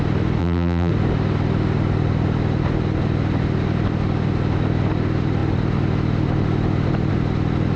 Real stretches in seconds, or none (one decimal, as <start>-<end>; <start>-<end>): 0.0-0.4; 0.9-7.8